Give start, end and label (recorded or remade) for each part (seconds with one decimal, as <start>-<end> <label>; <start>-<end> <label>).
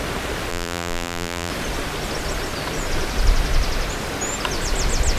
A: 0.0-0.5 recorded; 0.5-1.5 remade; 1.5-5.2 recorded